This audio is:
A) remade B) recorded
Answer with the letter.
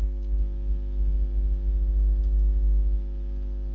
B